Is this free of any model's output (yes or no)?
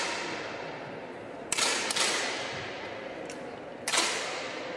no